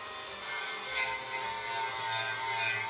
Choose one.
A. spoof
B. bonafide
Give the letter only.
B